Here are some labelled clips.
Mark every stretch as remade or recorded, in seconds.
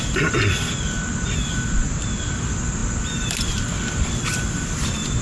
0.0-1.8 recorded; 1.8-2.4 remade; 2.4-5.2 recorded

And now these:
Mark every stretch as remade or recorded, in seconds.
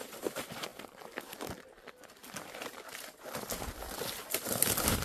0.0-5.0 remade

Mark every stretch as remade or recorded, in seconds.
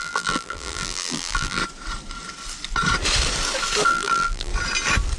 0.0-1.6 remade; 1.6-3.9 recorded; 3.9-4.5 remade; 4.5-5.2 recorded